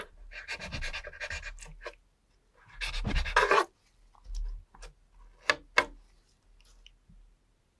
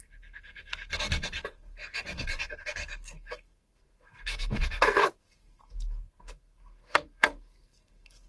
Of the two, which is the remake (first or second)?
second